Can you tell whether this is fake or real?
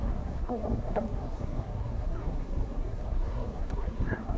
fake